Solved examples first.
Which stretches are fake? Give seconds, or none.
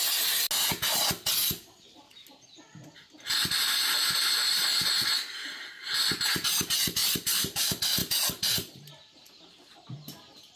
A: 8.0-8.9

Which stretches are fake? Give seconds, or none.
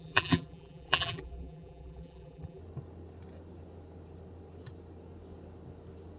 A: 0.0-2.6